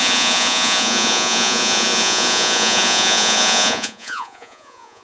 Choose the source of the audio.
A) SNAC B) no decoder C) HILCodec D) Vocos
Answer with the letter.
D